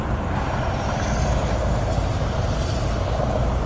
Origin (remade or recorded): recorded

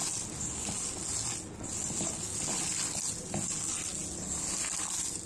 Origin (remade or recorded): recorded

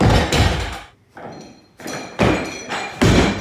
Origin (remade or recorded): recorded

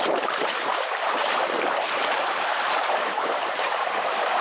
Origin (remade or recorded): remade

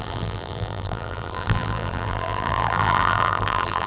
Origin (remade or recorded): remade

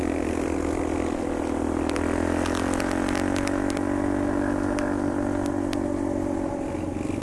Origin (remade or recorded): recorded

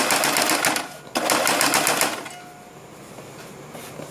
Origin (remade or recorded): recorded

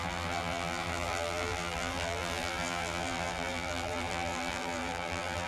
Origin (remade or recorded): remade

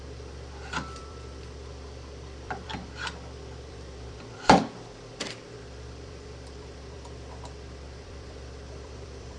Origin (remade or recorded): remade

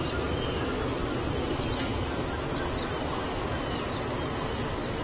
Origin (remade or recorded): recorded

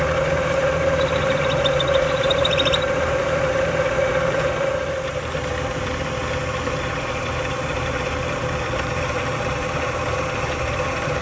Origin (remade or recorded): remade